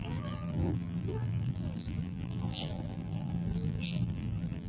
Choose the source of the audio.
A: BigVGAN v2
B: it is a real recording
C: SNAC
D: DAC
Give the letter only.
A